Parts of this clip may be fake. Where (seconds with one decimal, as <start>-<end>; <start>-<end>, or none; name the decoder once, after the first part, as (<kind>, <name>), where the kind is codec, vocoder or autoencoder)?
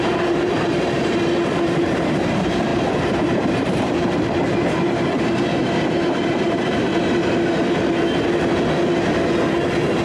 0.0-6.9 (vocoder, BigVGAN v2); 9.5-10.0